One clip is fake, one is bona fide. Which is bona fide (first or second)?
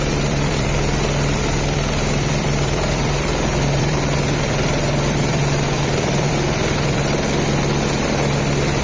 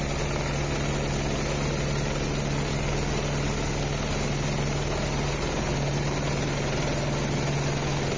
second